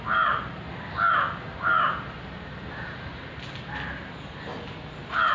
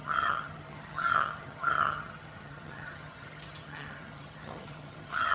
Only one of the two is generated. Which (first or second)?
second